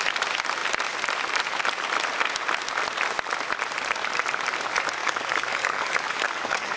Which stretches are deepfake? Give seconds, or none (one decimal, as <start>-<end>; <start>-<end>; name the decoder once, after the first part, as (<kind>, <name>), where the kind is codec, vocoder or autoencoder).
5.0-6.8 (codec, DAC)